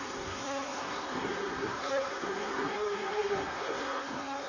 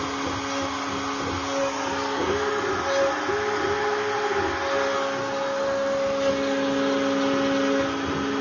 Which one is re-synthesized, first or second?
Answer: first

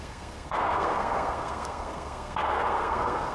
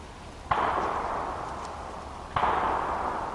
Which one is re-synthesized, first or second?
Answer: first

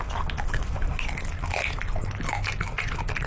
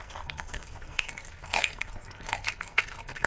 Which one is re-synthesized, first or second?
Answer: second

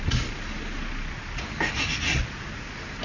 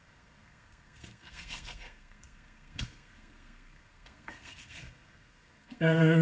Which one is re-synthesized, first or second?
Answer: second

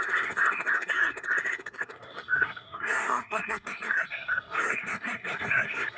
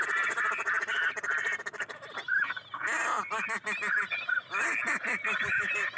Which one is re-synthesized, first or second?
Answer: first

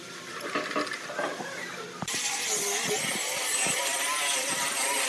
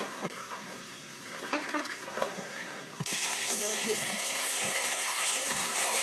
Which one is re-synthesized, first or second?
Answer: second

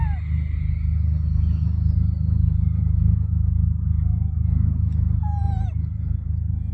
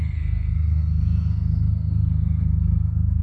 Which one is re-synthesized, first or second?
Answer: second